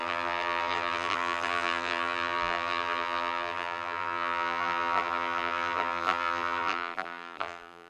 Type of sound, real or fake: fake